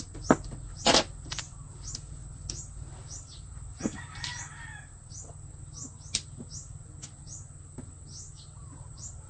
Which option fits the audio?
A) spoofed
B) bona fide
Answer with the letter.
B